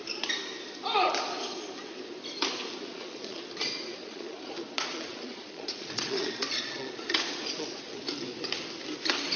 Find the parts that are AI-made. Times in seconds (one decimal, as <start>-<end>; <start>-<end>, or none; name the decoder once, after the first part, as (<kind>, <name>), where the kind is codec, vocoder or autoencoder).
2.9-3.5 (vocoder, Vocos); 4.0-8.0